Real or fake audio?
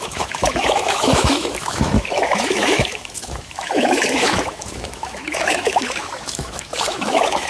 fake